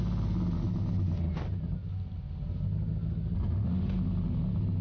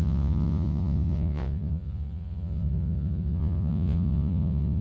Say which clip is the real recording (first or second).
first